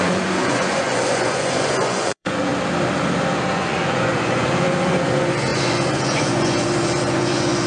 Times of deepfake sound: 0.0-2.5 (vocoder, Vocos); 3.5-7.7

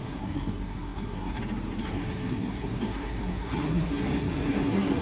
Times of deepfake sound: 0.0-1.4 (codec, SNAC); 1.8-5.0

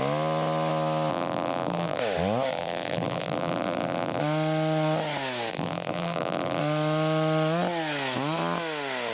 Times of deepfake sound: 1.1-2.0 (vocoder, BigVGAN v2); 2.5-4.2; 5.5-6.6

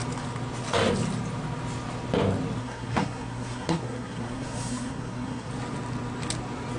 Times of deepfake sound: 2.6-5.5 (codec, SNAC)

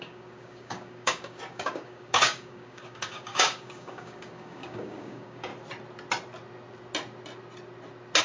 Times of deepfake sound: 0.0-5.5 (codec, DAC)

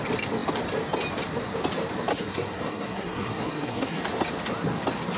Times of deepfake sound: 2.1-4.0 (codec, SNAC)

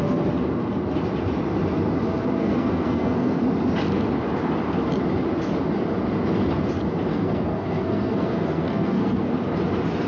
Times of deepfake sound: 2.4-3.4 (codec, SNAC); 7.1-9.3